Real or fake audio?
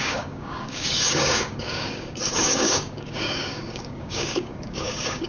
fake